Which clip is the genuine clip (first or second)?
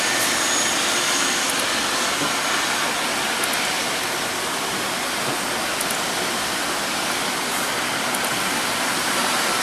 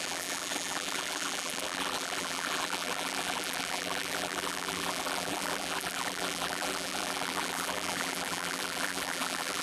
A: first